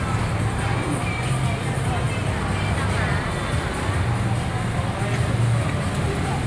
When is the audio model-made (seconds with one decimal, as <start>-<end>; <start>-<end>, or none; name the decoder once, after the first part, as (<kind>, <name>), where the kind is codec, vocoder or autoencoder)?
none